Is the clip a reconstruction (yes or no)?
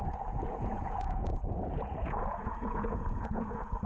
yes